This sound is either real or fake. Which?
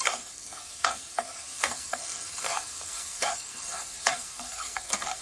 fake